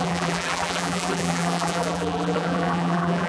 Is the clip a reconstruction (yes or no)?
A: yes